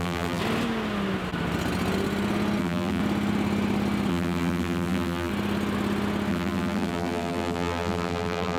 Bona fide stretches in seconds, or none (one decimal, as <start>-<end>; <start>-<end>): 0.4-2.6; 3.0-4.1; 5.3-6.3